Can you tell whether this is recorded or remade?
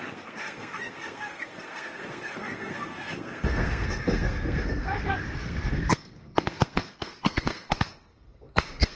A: remade